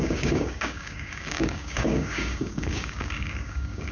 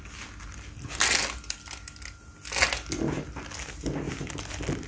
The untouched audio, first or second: second